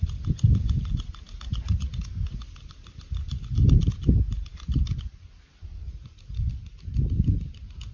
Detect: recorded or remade recorded